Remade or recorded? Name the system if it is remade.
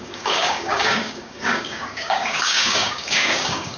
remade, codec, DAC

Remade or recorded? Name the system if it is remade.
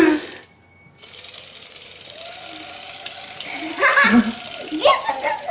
recorded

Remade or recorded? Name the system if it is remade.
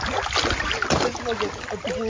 recorded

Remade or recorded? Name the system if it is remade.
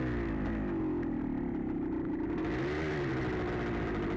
recorded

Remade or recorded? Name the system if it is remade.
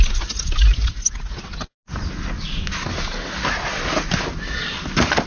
recorded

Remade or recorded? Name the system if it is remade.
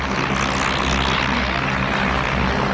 recorded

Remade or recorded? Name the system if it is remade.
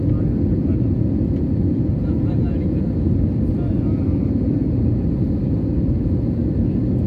recorded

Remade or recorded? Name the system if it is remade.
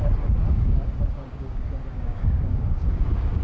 remade, codec, DAC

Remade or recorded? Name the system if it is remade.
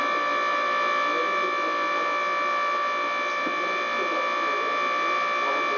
recorded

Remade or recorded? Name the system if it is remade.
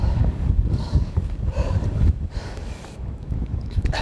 remade, codec, DAC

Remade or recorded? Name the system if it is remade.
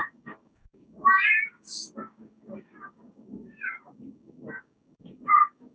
remade, codec, DAC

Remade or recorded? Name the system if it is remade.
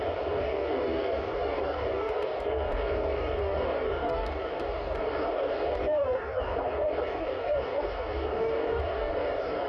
remade, codec, DAC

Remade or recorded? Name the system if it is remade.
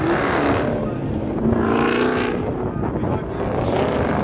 recorded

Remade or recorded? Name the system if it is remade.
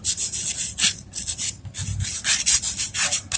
recorded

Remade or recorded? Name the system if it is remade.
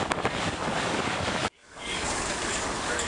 remade, codec, DAC